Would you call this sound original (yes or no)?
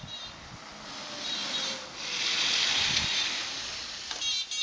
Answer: yes